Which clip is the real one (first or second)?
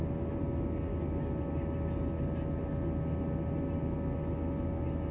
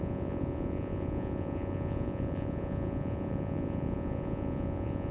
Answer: first